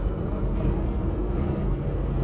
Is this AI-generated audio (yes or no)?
yes